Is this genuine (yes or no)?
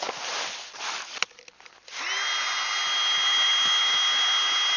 yes